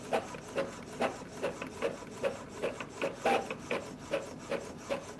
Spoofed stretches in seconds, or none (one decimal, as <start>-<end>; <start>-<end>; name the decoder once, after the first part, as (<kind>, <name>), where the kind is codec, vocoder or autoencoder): none